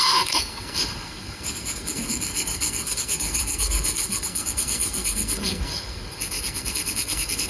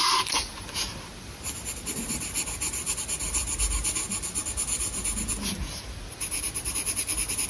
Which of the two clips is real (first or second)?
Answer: second